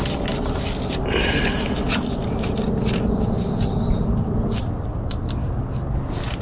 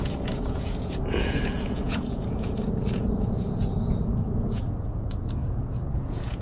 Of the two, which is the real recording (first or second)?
first